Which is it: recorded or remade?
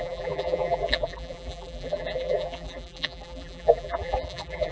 remade